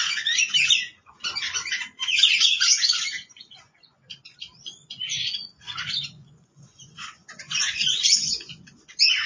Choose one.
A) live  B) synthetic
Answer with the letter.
B